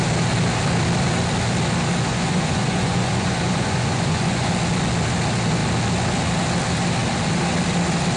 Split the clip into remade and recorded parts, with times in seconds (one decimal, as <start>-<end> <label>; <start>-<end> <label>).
0.0-2.1 recorded; 2.1-4.5 remade; 4.5-8.2 recorded

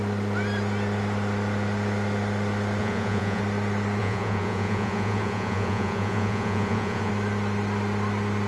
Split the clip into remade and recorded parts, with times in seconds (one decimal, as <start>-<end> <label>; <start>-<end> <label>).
0.0-2.8 recorded; 2.8-3.4 remade; 3.4-4.0 recorded; 4.0-7.1 remade; 7.1-8.5 recorded

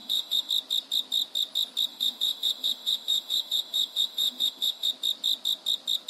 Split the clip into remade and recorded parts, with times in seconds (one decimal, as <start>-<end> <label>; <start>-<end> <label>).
0.0-0.5 remade; 0.5-1.9 recorded; 1.9-4.9 remade; 4.9-6.1 recorded

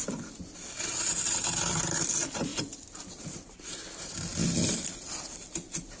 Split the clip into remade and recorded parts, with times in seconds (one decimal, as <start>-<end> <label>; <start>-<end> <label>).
0.0-6.0 recorded

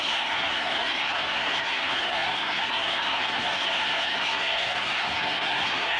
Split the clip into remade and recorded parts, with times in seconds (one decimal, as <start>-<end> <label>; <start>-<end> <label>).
0.0-6.0 remade

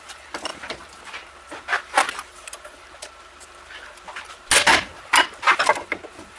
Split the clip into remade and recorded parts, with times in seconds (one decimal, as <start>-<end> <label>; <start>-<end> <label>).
0.0-0.5 recorded; 0.5-4.3 remade; 4.3-6.4 recorded

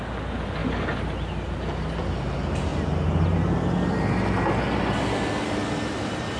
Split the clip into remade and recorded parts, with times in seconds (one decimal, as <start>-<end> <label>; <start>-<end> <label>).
0.0-6.4 recorded